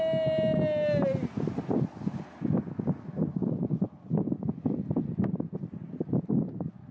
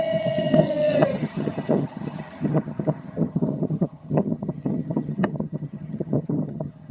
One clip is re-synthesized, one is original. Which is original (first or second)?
first